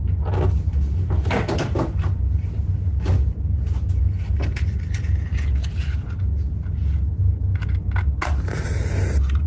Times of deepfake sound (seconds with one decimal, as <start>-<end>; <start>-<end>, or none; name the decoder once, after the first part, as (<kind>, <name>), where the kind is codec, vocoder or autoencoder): 5.3-6.1 (vocoder, Vocos)